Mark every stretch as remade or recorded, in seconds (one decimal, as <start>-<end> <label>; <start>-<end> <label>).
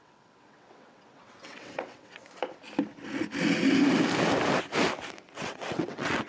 0.0-2.2 remade; 2.2-5.2 recorded; 5.2-6.3 remade